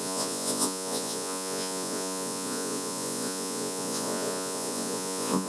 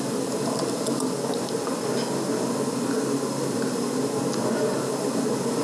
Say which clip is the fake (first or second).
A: first